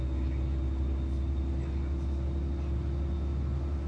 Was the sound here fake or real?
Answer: real